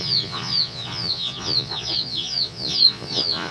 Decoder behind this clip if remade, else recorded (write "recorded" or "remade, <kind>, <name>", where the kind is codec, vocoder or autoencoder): remade, vocoder, Vocos